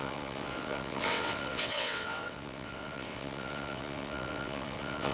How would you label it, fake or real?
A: fake